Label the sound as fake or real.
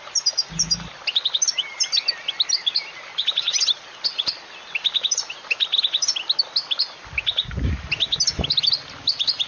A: real